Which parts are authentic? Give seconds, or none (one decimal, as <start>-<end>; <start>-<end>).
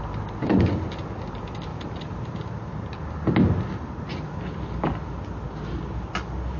0.0-6.6